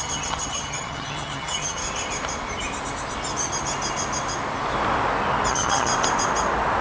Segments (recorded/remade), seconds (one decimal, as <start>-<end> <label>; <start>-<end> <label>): 0.0-1.8 remade; 1.8-5.5 recorded; 5.5-5.9 remade; 5.9-6.8 recorded